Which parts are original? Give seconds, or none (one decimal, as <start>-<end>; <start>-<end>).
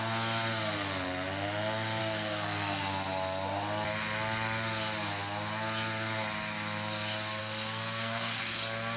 0.0-2.0; 2.8-7.4; 8.4-9.0